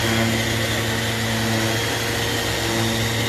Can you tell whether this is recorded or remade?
recorded